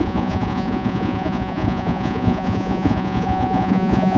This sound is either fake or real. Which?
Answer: fake